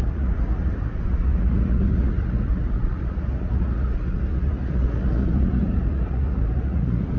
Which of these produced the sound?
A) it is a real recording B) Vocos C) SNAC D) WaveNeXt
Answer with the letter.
B